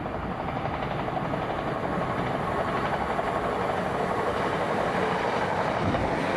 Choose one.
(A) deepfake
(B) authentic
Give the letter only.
B